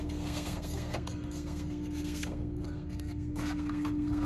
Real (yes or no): no